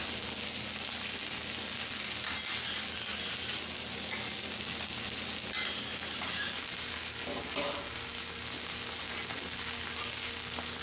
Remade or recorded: recorded